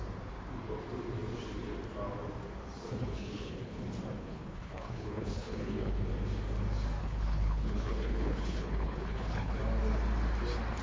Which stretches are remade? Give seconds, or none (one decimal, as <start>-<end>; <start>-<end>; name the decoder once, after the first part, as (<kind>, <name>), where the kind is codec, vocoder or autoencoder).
2.9-3.8 (codec, HILCodec); 4.2-6.1; 7.0-9.6